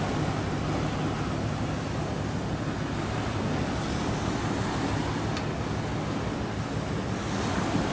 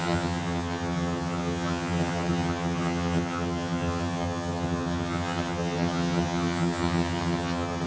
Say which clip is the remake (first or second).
second